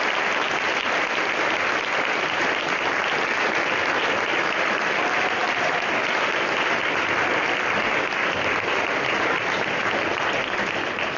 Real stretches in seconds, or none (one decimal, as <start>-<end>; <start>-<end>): 0.0-11.2